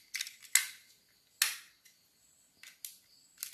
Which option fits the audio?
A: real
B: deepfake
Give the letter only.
A